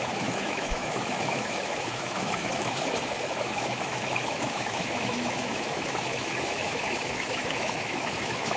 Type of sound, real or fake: fake